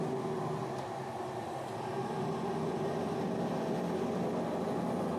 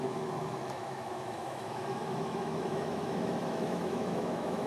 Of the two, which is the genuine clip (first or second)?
first